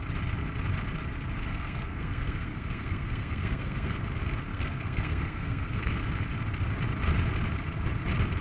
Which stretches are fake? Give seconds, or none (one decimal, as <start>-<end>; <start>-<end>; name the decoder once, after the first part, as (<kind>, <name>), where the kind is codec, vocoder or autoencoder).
1.5-4.0 (codec, SNAC); 4.5-5.9